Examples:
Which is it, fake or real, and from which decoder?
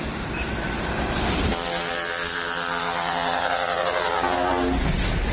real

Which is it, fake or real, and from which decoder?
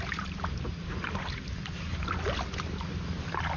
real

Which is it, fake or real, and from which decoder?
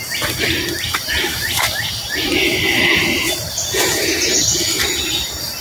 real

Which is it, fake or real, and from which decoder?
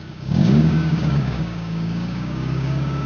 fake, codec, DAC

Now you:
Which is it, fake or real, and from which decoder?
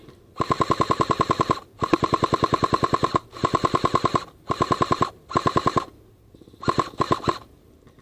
real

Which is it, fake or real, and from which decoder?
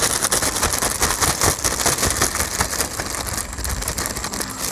real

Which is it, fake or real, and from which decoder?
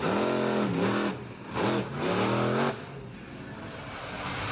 real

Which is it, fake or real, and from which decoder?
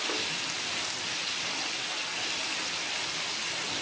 real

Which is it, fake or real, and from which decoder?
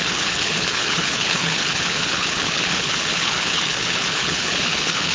fake, codec, HILCodec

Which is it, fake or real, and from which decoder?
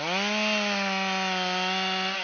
real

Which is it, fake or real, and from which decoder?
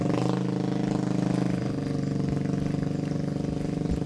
real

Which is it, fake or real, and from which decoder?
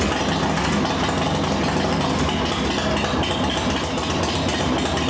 real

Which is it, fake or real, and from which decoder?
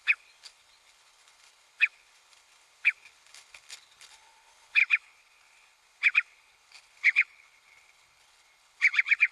fake, codec, HILCodec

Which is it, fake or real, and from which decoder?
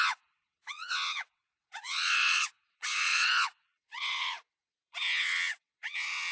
fake, vocoder, WaveNeXt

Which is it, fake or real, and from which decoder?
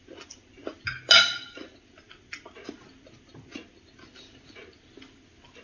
real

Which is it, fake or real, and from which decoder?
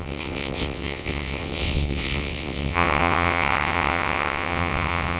fake, vocoder, WaveNeXt